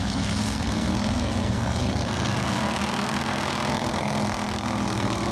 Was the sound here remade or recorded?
remade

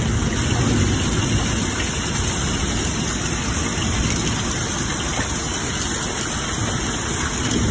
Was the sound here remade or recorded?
recorded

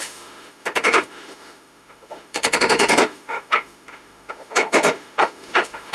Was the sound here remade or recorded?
remade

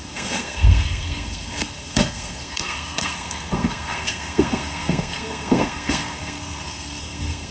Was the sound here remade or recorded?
remade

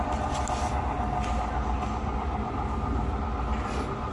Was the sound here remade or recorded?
recorded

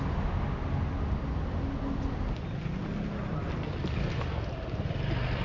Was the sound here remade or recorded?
recorded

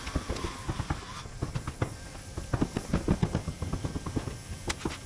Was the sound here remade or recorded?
recorded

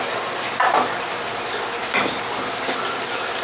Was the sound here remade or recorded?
recorded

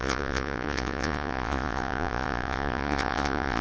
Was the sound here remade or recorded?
remade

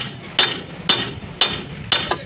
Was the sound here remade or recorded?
recorded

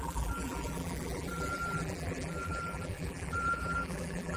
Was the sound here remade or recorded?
remade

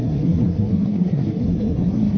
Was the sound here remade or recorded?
remade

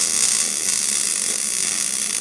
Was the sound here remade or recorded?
recorded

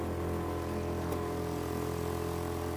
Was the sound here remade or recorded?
recorded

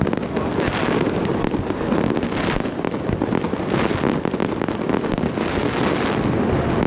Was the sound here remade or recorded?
recorded